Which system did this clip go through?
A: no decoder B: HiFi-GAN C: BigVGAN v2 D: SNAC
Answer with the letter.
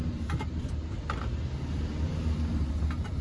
A